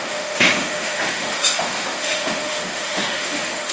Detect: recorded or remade remade